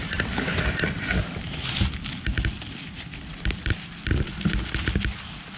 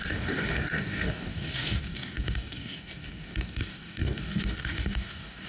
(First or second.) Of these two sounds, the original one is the first